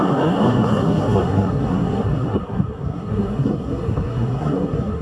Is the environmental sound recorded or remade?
remade